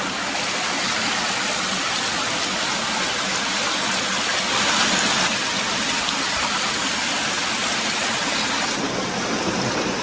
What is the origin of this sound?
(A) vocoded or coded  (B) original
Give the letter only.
B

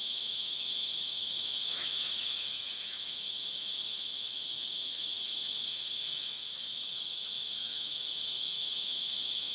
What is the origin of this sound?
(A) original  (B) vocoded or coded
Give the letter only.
B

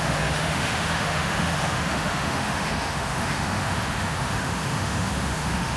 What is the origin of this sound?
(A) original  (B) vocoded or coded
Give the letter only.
B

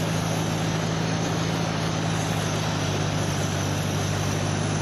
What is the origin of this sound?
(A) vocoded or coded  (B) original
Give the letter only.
B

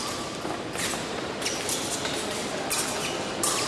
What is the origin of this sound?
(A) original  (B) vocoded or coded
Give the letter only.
A